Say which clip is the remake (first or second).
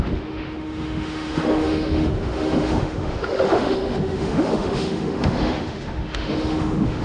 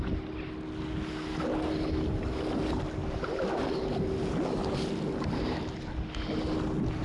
first